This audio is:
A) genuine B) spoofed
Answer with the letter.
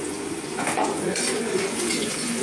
B